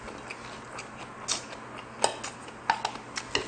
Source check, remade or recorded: recorded